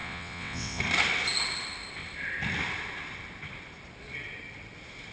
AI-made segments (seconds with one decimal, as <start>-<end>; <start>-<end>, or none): 0.0-0.8